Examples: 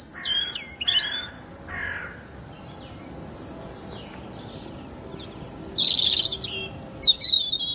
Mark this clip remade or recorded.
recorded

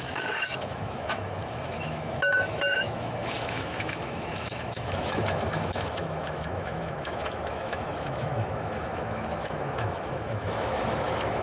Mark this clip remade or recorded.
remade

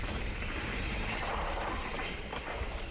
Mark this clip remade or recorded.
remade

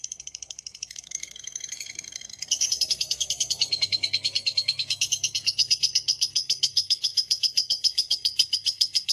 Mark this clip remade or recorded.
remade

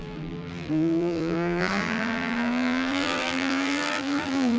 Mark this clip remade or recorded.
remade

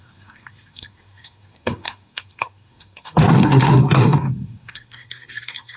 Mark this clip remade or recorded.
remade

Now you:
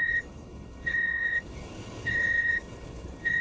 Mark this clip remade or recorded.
remade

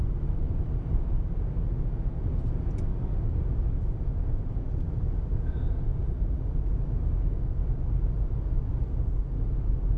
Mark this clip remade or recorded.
recorded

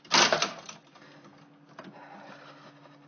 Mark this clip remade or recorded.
recorded